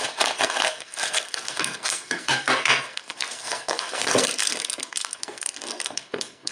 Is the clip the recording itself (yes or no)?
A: no